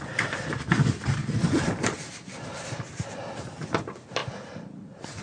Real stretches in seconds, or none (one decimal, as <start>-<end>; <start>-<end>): 0.0-1.2; 3.8-5.2